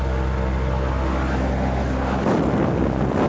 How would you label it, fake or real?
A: real